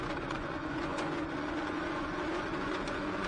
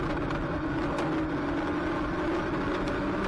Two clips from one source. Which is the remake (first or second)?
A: first